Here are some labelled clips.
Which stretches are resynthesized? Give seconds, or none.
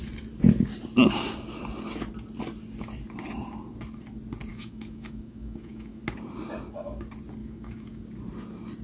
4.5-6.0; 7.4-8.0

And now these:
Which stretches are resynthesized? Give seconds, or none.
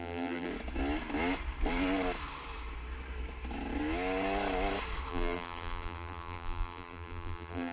0.0-0.5; 5.1-7.7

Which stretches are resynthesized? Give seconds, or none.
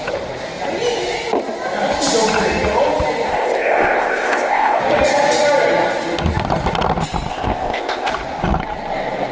3.3-4.8; 7.3-8.1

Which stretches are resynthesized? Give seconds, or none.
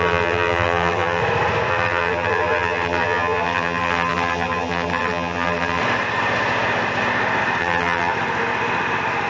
0.0-1.2; 1.7-5.8; 7.6-8.1